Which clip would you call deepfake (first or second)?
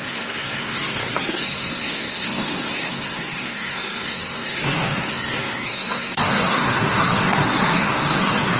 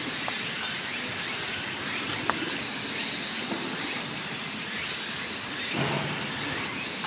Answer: first